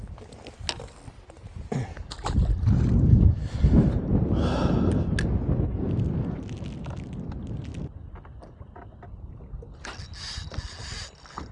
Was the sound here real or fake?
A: real